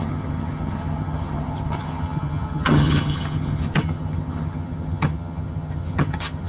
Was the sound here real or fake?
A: fake